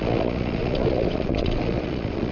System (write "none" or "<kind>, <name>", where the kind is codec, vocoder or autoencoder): vocoder, Vocos